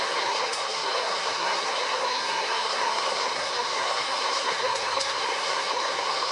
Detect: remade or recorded remade